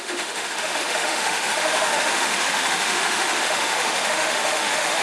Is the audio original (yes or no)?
no